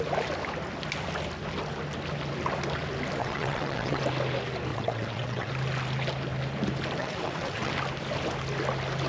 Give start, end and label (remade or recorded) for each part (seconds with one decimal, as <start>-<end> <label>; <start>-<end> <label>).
0.0-3.2 recorded; 3.2-4.0 remade; 4.0-4.7 recorded; 4.7-5.5 remade; 5.5-7.0 recorded; 7.0-7.7 remade; 7.7-9.1 recorded